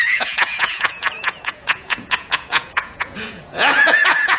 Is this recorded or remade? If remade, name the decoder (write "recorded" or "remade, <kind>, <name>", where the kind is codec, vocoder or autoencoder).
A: remade, vocoder, Vocos